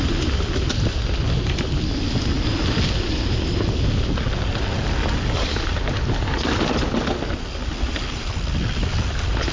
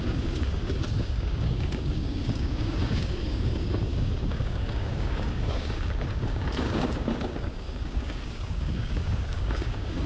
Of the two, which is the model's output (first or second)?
second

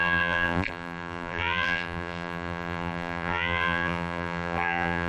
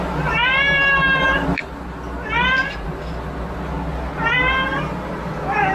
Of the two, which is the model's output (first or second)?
first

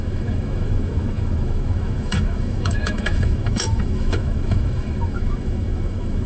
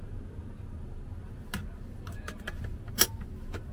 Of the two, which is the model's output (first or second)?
first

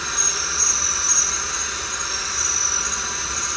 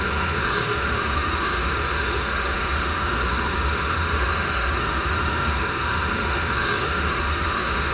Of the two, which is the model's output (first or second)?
second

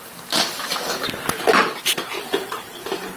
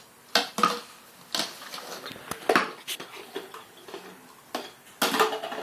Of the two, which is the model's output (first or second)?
first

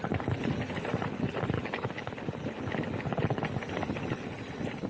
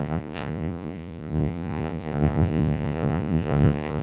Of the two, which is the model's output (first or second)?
second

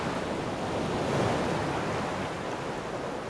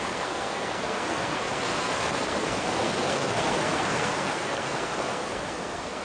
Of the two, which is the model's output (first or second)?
second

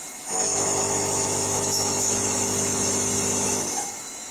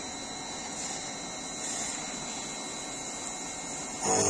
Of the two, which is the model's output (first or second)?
first